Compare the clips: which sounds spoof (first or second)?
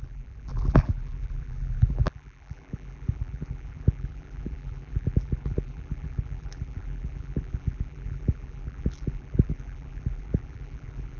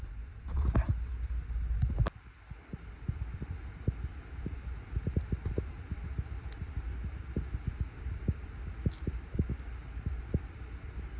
first